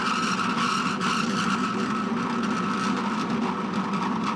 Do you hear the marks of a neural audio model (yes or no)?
no